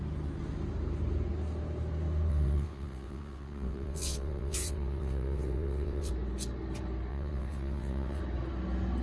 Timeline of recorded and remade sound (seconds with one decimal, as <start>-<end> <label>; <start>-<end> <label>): 0.0-2.3 recorded; 2.3-6.1 remade; 6.1-7.1 recorded; 7.1-8.2 remade; 8.2-9.0 recorded